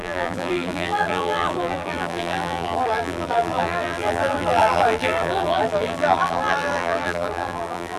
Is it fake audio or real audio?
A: fake